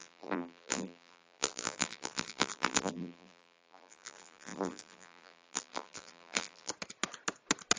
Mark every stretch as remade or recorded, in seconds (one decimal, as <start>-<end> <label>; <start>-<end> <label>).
0.0-6.7 remade; 6.7-7.8 recorded